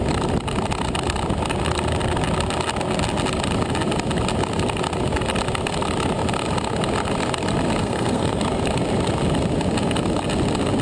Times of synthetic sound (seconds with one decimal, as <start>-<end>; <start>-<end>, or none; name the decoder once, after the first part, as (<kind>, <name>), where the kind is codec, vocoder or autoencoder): 7.8-8.4 (codec, SNAC)